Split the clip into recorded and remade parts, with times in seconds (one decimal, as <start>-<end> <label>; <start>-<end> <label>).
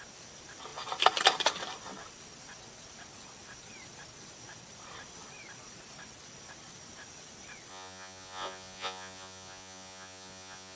0.0-7.7 recorded; 7.7-10.8 remade